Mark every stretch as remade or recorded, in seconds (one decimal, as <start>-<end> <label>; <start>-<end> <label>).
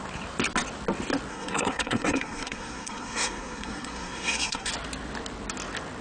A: 0.0-1.3 recorded; 1.3-4.7 remade; 4.7-6.0 recorded